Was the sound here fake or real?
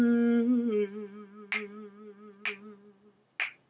real